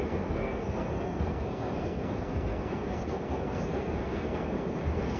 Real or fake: fake